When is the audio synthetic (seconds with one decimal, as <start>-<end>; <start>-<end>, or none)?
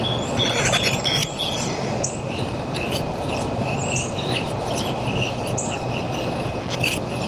1.2-5.4